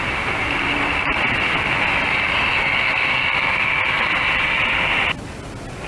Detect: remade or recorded recorded